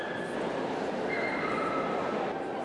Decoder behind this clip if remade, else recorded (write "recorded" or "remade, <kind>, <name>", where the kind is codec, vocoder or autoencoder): recorded